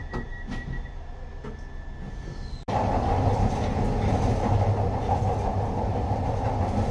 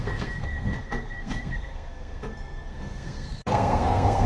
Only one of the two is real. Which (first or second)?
first